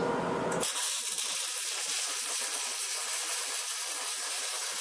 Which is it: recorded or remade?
recorded